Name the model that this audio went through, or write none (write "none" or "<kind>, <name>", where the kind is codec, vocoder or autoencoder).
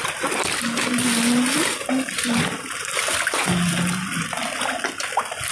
none